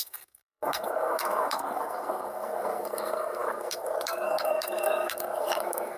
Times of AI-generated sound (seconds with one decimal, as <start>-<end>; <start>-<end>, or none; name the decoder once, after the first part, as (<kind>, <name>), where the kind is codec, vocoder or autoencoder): 0.0-6.0 (codec, SNAC)